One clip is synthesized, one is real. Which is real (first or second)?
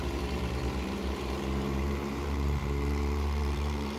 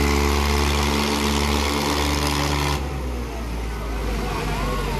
second